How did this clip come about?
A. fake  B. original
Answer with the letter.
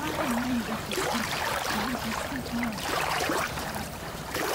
A